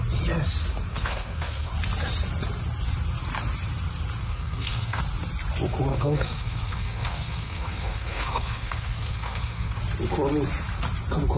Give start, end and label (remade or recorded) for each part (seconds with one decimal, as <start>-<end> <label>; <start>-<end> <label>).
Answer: 0.0-0.9 recorded; 0.9-1.7 remade; 1.7-4.2 recorded; 4.2-5.0 remade; 5.0-5.9 recorded; 5.9-9.8 remade; 9.8-11.4 recorded